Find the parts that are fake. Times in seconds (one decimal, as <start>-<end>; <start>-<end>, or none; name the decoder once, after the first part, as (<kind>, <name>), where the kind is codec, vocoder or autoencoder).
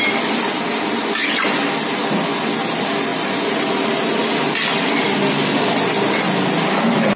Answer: none